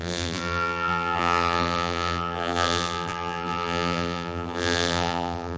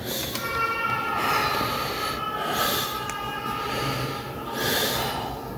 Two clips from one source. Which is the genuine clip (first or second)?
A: second